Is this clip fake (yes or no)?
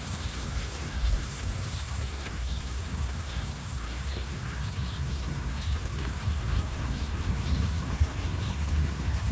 yes